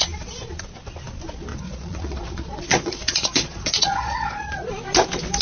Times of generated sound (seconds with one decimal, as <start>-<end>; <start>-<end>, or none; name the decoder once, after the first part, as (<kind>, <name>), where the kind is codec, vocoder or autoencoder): 1.5-4.7 (vocoder, Vocos)